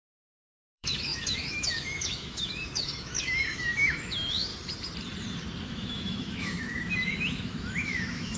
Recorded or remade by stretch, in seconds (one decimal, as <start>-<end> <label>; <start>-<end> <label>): 0.0-4.5 remade; 4.5-5.6 recorded; 5.6-8.4 remade